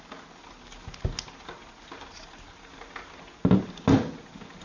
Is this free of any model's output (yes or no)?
yes